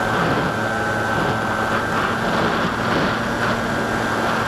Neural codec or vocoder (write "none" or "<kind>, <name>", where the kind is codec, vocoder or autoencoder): none